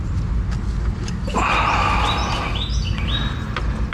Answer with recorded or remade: recorded